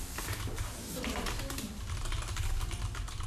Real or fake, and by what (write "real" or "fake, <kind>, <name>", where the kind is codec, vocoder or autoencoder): real